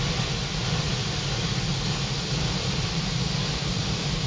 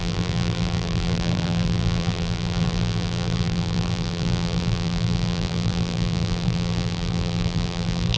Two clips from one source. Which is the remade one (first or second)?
second